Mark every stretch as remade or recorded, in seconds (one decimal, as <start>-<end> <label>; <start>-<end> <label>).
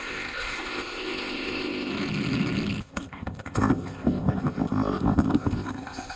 0.0-1.9 remade; 1.9-2.8 recorded; 2.8-6.2 remade